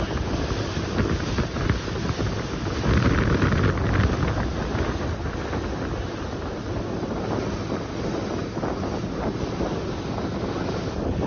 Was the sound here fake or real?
real